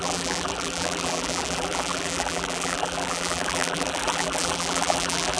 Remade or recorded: remade